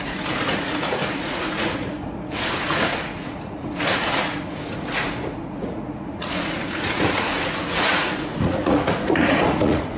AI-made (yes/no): yes